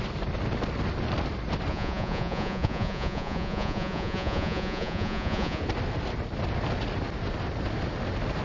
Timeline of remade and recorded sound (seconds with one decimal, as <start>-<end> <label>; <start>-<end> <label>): 0.0-1.7 recorded; 1.7-5.6 remade; 5.6-8.4 recorded